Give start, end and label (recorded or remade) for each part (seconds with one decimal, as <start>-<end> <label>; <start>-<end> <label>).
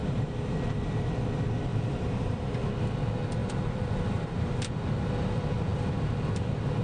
0.0-1.1 remade; 1.1-1.7 recorded; 1.7-2.7 remade; 2.7-3.4 recorded; 3.4-4.7 remade; 4.7-6.8 recorded